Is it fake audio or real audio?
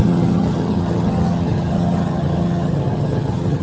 fake